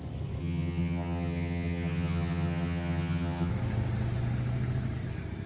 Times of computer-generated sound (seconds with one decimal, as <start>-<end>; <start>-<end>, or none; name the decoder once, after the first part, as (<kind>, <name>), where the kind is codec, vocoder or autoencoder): 0.4-3.5 (vocoder, HiFi-GAN)